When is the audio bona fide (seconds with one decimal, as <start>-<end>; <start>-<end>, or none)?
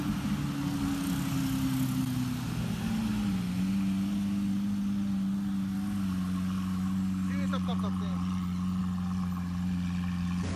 0.0-10.6